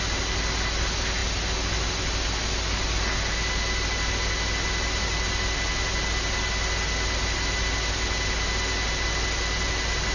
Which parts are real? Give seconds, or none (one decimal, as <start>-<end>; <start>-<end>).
0.0-10.1